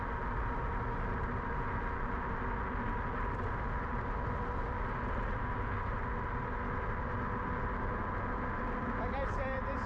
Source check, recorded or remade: recorded